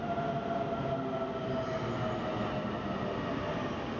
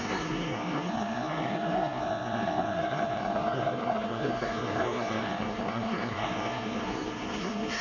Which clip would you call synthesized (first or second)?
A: second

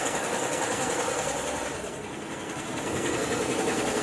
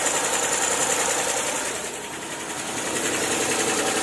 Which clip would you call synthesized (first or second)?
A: first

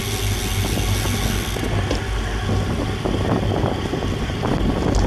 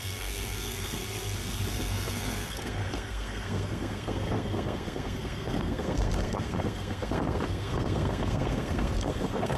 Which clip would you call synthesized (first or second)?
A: second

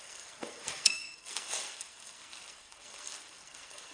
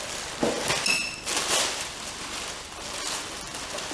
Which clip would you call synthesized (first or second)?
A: first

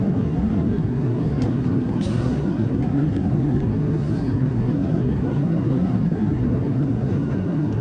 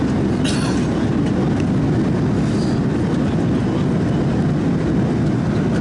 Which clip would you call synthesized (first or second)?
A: first